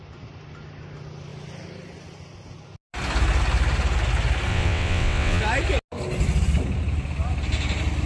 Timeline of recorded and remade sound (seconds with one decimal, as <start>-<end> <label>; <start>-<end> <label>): 0.0-4.5 recorded; 4.5-5.4 remade; 5.4-8.1 recorded